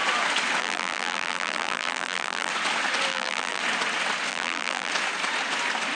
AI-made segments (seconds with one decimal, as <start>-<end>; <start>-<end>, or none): 0.6-2.5; 3.1-3.6; 4.3-4.9